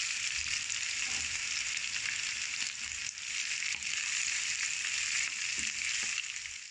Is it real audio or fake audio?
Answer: real